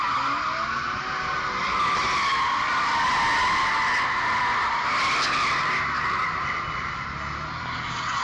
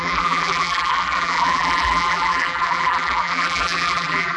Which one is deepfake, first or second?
second